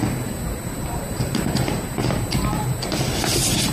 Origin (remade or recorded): recorded